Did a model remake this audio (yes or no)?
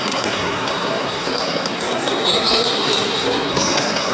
yes